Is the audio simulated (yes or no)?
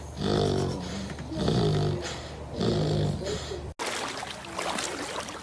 no